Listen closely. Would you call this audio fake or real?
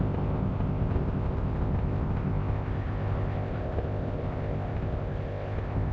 fake